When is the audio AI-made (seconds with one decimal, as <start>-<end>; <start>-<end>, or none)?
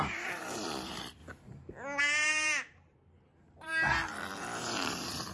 0.0-1.2; 2.0-3.7; 4.4-5.3